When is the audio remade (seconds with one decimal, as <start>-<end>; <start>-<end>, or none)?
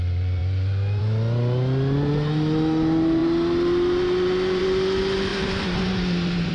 5.3-6.5